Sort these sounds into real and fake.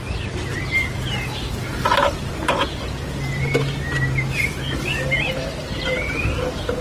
real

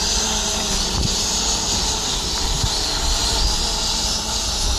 real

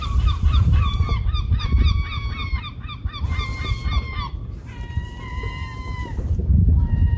fake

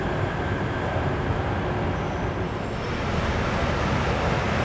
real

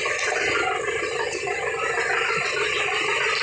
real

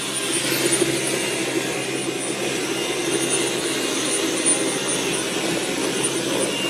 real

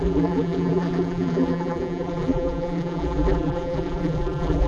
fake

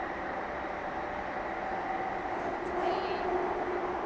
real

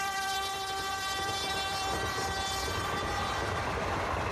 fake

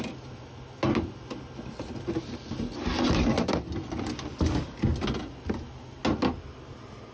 real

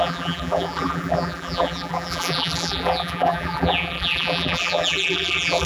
fake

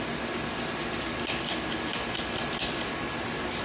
real